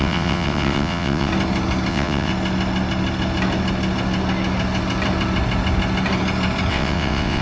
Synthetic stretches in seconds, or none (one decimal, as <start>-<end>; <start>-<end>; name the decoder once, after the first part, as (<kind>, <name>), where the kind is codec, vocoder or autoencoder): 0.0-1.3 (vocoder, WaveNeXt); 1.9-2.3; 6.7-7.4